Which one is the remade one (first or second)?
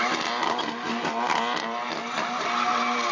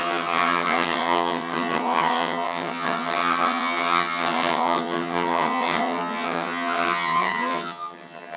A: second